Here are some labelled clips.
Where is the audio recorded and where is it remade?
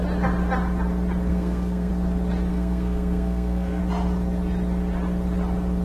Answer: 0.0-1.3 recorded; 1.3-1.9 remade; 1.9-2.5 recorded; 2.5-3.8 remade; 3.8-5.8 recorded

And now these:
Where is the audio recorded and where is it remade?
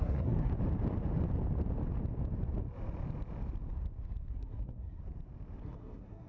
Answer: 0.0-0.5 remade; 0.5-4.3 recorded; 4.3-5.0 remade; 5.0-5.6 recorded; 5.6-6.3 remade